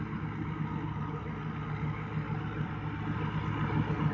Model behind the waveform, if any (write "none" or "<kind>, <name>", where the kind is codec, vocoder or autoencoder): none